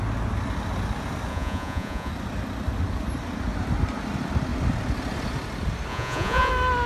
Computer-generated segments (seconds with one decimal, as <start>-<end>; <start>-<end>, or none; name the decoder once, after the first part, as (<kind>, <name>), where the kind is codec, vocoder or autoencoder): 1.3-2.1 (vocoder, Vocos); 5.9-6.5